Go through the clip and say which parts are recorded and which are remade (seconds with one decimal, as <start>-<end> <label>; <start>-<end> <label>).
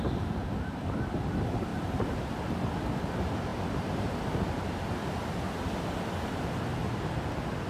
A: 0.0-1.7 recorded; 1.7-2.3 remade; 2.3-3.5 recorded; 3.5-4.2 remade; 4.2-7.7 recorded